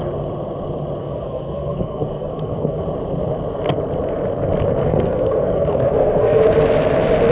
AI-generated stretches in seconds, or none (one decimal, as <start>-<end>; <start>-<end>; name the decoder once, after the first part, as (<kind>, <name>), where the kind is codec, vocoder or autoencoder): 1.0-2.8 (codec, SNAC); 4.8-6.4